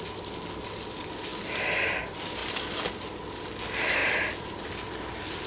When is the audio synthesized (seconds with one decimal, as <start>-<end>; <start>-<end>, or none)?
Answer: none